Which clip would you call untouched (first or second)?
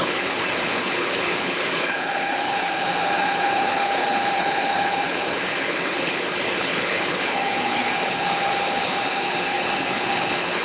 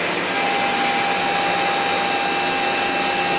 second